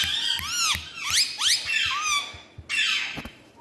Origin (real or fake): real